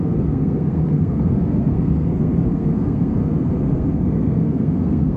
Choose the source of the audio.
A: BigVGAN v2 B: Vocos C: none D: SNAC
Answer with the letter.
D